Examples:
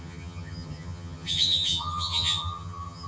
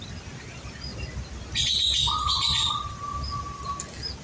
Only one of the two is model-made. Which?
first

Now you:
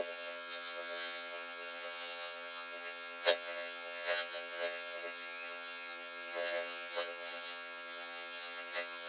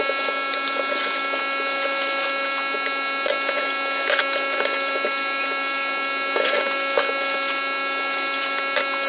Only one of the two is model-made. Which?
first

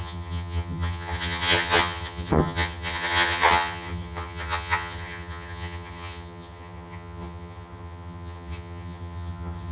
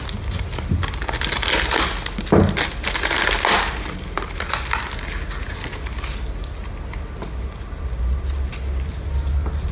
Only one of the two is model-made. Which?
first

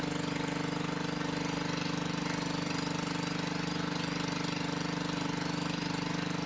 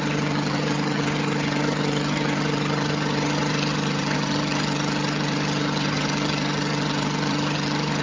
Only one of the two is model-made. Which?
second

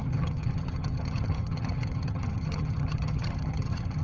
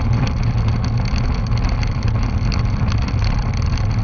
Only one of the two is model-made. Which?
first